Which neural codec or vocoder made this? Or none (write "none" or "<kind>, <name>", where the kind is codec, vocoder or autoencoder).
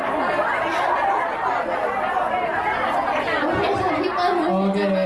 none